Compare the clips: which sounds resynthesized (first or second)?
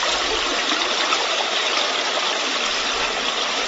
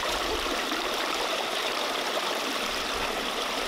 second